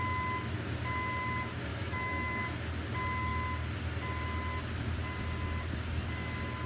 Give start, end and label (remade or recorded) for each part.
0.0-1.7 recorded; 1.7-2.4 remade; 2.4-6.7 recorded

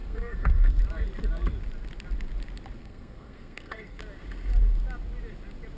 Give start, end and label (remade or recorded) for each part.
0.0-0.8 remade; 0.8-2.8 recorded; 2.8-4.0 remade; 4.0-5.8 recorded

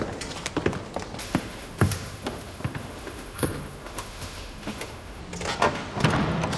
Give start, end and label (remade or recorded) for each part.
0.0-1.2 recorded; 1.2-5.2 remade; 5.2-6.6 recorded

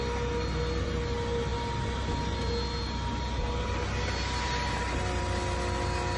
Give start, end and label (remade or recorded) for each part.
0.0-6.2 recorded

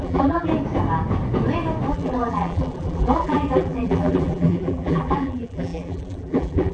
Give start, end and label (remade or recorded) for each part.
0.0-0.5 remade; 0.5-1.9 recorded; 1.9-6.7 remade

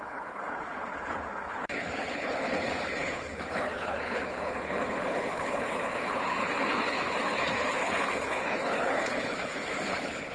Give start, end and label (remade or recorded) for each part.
0.0-10.3 remade

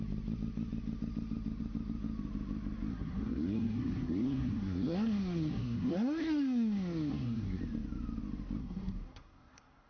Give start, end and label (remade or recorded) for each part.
0.0-2.9 recorded; 2.9-7.6 remade; 7.6-8.6 recorded; 8.6-9.9 remade

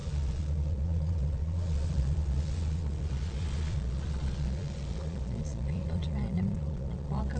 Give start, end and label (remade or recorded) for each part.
0.0-7.4 remade